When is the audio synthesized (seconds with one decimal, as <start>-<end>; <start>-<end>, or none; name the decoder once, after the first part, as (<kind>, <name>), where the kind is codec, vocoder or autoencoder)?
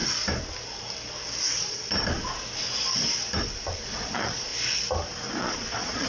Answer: 3.7-4.5 (vocoder, Vocos); 5.4-6.1